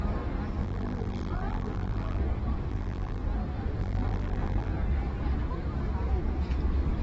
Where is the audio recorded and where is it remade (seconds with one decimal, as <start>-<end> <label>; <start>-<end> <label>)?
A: 0.0-0.6 recorded; 0.6-2.2 remade; 2.2-2.7 recorded; 2.7-3.2 remade; 3.2-3.8 recorded; 3.8-4.7 remade; 4.7-7.0 recorded